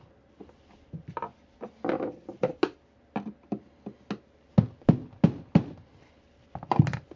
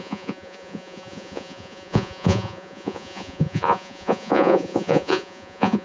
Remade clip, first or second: second